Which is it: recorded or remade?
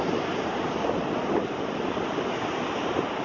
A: recorded